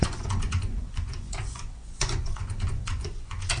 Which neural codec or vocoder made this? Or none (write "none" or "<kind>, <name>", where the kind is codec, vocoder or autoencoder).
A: vocoder, Vocos